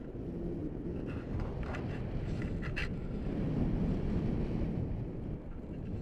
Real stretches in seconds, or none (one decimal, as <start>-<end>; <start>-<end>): 0.0-6.0